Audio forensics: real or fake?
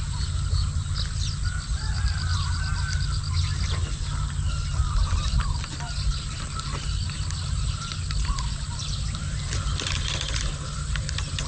real